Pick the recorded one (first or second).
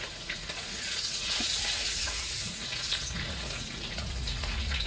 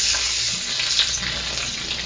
second